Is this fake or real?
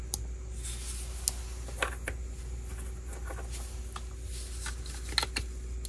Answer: real